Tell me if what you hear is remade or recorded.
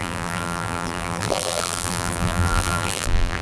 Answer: remade